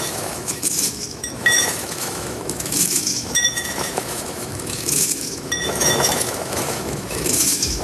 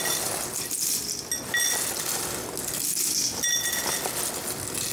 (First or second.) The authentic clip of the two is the second